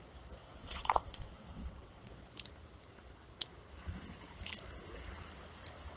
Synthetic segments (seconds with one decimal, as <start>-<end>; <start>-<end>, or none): 0.4-2.1

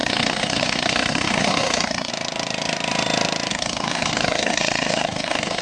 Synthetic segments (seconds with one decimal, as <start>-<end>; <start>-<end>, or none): 0.0-2.1; 3.5-5.6

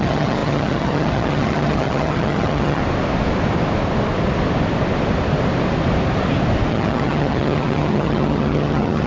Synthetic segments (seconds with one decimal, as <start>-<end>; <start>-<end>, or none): 0.0-2.8; 6.7-9.1

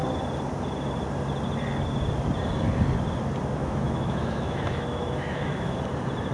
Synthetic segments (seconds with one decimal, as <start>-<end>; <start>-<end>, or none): 3.6-5.8